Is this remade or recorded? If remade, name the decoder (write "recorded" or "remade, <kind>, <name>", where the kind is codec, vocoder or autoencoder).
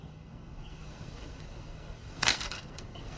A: remade, codec, SNAC